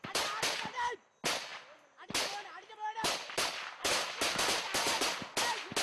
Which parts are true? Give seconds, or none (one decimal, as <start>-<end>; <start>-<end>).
0.0-5.8